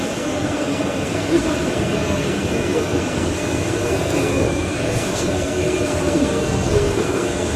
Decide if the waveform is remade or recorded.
remade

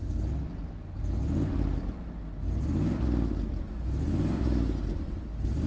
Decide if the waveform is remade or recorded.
recorded